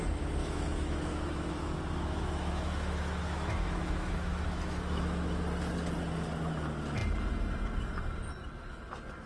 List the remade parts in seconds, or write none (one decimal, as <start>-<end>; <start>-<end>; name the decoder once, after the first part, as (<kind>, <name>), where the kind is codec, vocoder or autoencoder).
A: 0.4-5.4 (autoencoder, DAC-VAE)